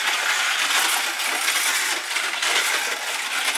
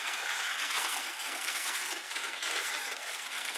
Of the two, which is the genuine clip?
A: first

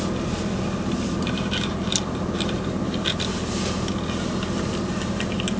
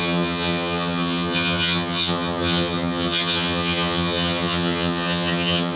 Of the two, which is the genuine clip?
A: first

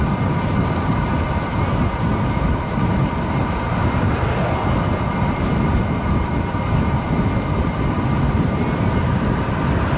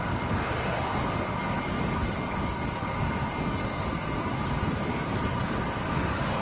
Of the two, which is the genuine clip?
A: first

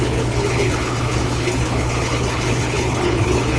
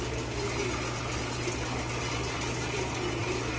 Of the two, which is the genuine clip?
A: second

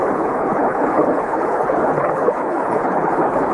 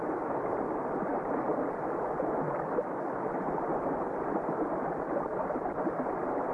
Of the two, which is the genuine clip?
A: second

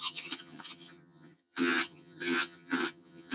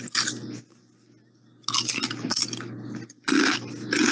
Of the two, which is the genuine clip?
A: second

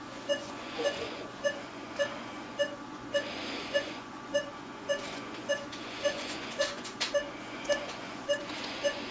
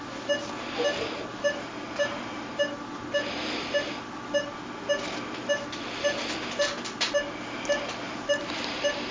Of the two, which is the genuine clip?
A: second